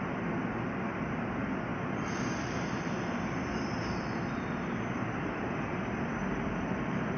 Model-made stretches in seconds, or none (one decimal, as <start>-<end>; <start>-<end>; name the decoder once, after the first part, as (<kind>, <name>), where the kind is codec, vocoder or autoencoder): none